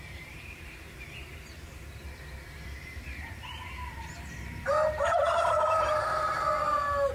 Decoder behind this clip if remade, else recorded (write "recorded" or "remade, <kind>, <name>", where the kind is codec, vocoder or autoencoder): remade, vocoder, BigVGAN v2